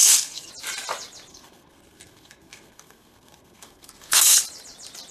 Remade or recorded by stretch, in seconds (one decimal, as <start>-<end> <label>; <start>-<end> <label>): 0.0-0.5 remade; 0.5-1.3 recorded; 1.3-4.4 remade; 4.4-5.1 recorded